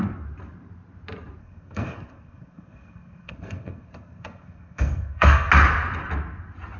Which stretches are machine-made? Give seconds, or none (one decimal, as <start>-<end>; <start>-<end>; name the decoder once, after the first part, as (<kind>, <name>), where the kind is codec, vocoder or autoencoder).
1.4-5.5 (codec, SNAC)